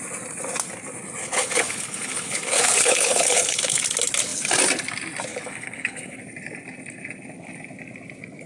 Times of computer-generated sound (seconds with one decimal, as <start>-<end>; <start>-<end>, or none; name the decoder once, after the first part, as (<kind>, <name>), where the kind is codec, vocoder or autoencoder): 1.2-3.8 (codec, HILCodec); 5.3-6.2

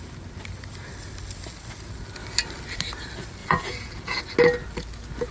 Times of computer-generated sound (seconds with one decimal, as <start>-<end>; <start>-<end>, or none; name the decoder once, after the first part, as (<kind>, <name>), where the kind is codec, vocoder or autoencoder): 3.4-4.2 (vocoder, Vocos)

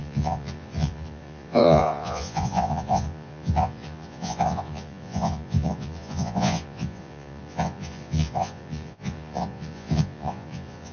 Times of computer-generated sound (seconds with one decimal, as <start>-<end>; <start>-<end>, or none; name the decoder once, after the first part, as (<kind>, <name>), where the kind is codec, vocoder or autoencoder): 0.0-10.9 (vocoder, Vocos)

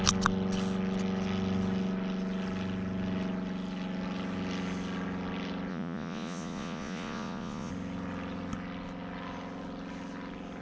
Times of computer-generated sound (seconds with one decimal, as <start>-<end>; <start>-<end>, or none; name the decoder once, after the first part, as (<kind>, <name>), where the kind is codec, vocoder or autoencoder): 5.7-7.7 (vocoder, Vocos)

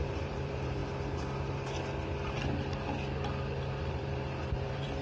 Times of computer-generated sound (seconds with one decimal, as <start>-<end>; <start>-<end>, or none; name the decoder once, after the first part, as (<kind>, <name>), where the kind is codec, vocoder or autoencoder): 0.0-0.8 (vocoder, BigVGAN v2); 3.8-5.0